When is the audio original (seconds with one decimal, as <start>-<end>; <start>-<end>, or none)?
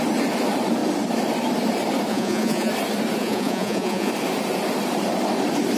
0.0-2.1; 2.7-3.2; 4.1-5.8